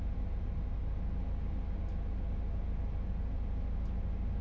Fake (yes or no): no